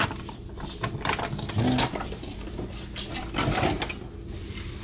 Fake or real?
real